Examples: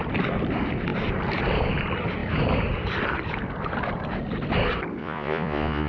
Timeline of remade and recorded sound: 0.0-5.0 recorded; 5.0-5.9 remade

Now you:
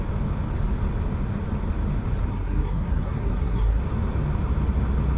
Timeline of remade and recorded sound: 0.0-2.3 recorded; 2.3-3.8 remade; 3.8-5.2 recorded